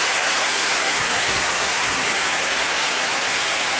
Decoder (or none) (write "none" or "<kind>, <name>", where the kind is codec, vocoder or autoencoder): codec, SNAC